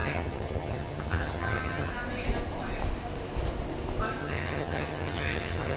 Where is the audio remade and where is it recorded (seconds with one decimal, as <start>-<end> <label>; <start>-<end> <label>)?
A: 0.0-1.9 remade; 1.9-4.2 recorded; 4.2-5.8 remade